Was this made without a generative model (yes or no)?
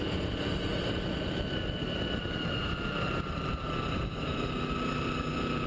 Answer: yes